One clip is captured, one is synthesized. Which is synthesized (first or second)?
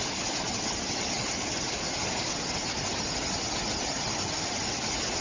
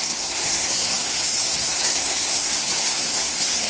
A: second